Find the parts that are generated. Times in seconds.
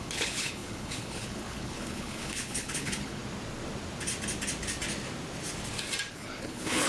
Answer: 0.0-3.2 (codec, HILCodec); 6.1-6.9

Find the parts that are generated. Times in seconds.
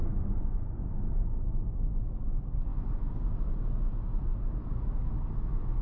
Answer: 0.0-0.8 (vocoder, Vocos)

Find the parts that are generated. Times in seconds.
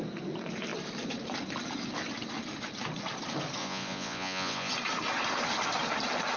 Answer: 3.6-4.7 (vocoder, Vocos)